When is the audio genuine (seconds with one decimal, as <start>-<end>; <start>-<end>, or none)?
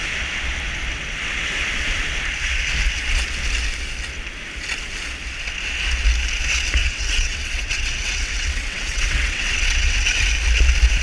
0.0-6.8; 10.3-11.0